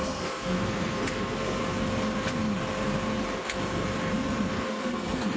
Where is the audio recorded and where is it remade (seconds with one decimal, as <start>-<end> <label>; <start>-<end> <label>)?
0.0-1.6 remade; 1.6-4.5 recorded; 4.5-5.4 remade